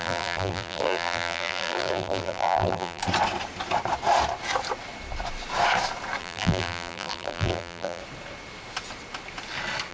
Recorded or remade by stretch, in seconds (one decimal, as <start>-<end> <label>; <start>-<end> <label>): 0.0-3.0 remade; 3.0-6.2 recorded; 6.2-8.0 remade; 8.0-9.9 recorded